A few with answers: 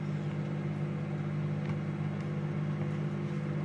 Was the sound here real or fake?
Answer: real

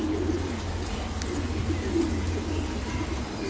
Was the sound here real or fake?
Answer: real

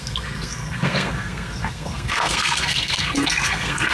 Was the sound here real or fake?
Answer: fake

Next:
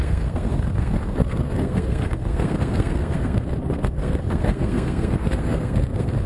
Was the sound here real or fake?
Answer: fake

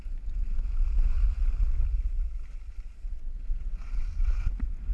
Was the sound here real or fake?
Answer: real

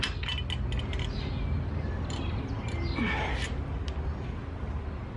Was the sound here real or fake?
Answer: real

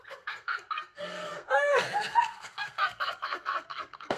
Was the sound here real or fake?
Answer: fake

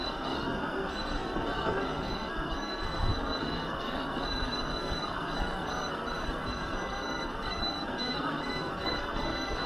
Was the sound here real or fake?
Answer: fake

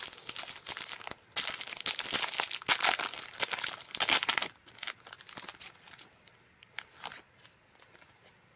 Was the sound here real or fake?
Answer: real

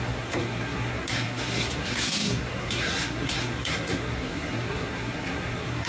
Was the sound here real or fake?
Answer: fake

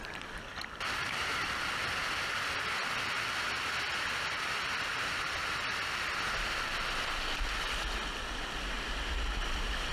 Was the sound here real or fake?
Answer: real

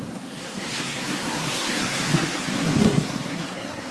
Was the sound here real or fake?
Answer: fake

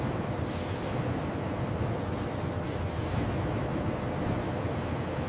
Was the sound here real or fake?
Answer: real